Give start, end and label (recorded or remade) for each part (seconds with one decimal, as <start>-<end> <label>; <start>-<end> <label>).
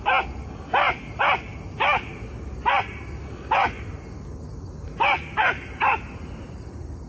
0.0-7.1 recorded